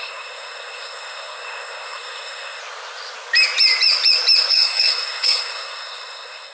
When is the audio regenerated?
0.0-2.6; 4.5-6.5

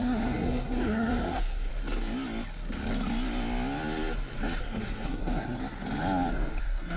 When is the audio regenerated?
0.0-1.7; 4.6-5.6; 6.6-7.0

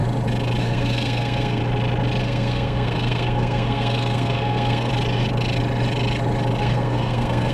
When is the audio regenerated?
0.6-1.6; 2.2-4.9; 6.6-7.5